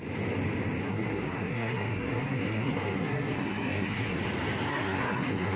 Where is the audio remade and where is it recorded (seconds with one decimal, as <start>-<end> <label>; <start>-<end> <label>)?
0.0-0.8 recorded; 0.8-4.2 remade; 4.2-4.7 recorded; 4.7-5.6 remade